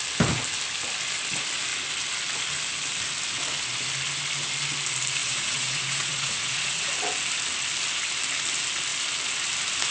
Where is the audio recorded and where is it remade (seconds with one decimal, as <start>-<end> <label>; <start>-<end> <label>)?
0.0-5.2 recorded; 5.2-6.9 remade; 6.9-9.9 recorded